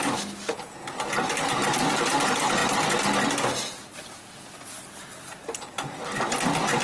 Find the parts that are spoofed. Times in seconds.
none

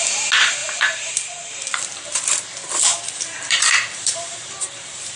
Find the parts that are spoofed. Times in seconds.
0.6-2.5 (vocoder, BigVGAN v2); 2.9-5.2

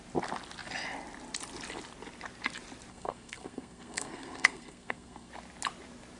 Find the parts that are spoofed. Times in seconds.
2.9-5.3 (codec, SNAC)

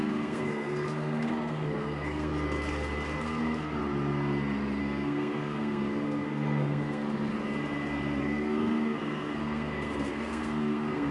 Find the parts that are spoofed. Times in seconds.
0.0-2.3 (codec, SNAC); 3.2-3.8; 4.8-7.3; 8.2-11.1

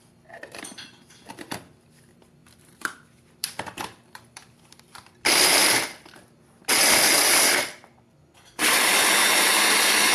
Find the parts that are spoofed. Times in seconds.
2.4-6.7 (vocoder, BigVGAN v2)